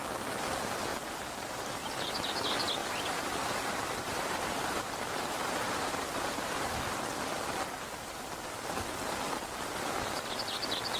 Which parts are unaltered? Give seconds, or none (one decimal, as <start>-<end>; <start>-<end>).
0.0-0.9; 1.8-2.8; 6.9-11.0